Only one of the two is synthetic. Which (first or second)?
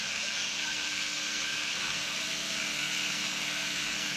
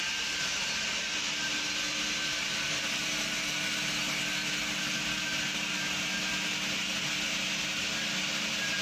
first